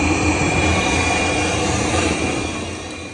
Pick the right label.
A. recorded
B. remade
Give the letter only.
A